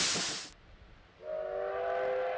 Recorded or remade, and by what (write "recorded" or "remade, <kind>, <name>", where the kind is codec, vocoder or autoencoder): recorded